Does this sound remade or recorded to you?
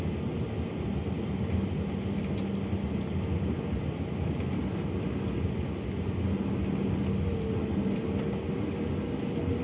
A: recorded